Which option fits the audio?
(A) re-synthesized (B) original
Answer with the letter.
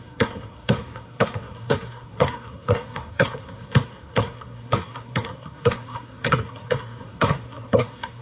A